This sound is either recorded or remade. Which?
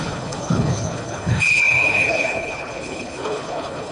remade